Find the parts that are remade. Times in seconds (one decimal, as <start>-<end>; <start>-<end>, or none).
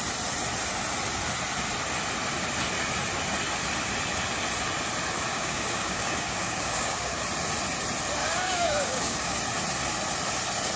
5.3-7.2; 8.2-9.4